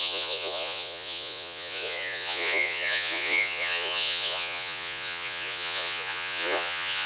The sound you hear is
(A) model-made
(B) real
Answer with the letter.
A